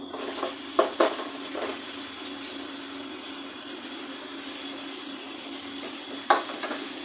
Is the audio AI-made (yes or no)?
no